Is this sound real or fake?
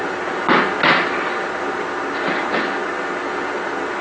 real